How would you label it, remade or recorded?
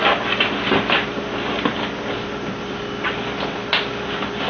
recorded